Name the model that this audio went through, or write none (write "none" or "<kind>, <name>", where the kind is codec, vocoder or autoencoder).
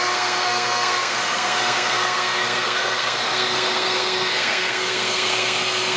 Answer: codec, SNAC